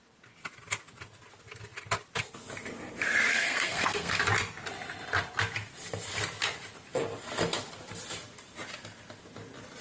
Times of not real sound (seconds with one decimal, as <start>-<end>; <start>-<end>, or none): 3.3-4.2